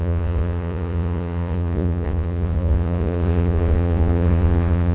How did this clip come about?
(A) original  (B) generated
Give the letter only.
B